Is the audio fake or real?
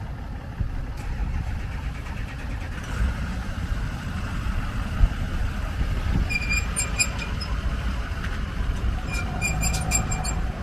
fake